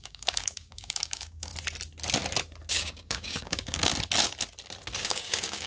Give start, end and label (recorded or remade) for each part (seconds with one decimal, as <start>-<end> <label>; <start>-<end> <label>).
0.0-1.5 remade; 1.5-2.7 recorded; 2.7-3.9 remade; 3.9-5.0 recorded; 5.0-5.7 remade